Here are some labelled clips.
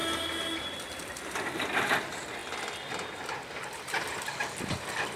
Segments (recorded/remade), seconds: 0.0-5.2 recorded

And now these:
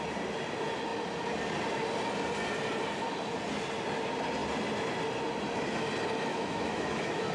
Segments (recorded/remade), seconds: 0.0-6.3 recorded; 6.3-7.3 remade

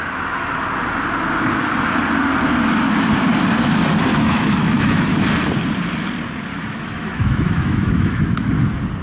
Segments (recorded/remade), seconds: 0.0-4.1 recorded; 4.1-5.1 remade; 5.1-6.5 recorded; 6.5-8.5 remade; 8.5-9.0 recorded

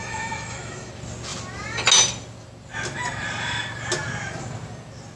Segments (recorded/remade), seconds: 0.0-0.9 remade; 0.9-5.2 recorded

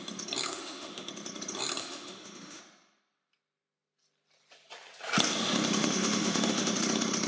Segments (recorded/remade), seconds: 0.0-0.5 recorded; 0.5-1.1 remade; 1.1-1.8 recorded; 1.8-2.6 remade; 2.6-5.8 recorded; 5.8-6.7 remade; 6.7-7.3 recorded

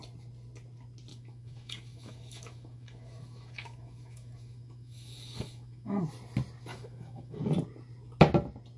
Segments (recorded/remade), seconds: 0.0-1.1 recorded; 1.1-6.0 remade; 6.0-6.7 recorded; 6.7-7.4 remade; 7.4-8.8 recorded

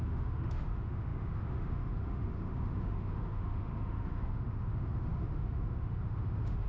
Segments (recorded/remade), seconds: 0.0-6.7 remade